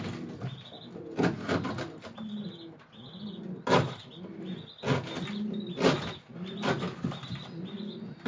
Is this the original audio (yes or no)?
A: yes